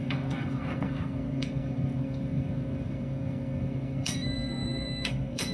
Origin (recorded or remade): remade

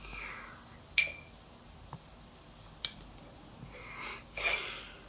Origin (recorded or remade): recorded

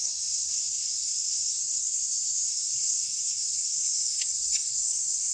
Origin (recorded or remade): remade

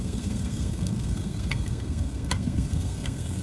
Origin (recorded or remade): remade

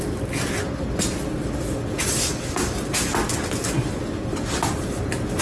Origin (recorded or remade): recorded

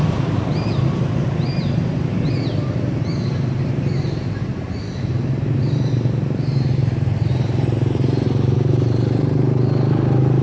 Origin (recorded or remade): remade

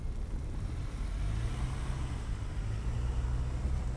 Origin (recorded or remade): recorded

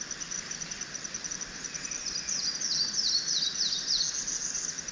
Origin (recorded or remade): recorded